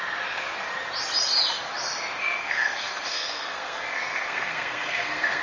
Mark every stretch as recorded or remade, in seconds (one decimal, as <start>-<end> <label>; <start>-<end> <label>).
0.0-2.2 recorded; 2.2-5.4 remade